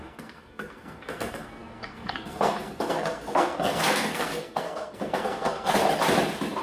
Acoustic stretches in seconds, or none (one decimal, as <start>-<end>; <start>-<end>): 5.8-6.6